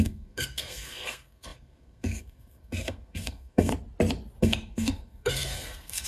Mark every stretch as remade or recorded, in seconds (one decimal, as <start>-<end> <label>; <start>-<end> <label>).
0.0-3.7 remade; 3.7-4.4 recorded; 4.4-6.1 remade